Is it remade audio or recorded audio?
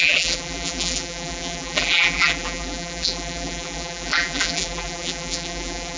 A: remade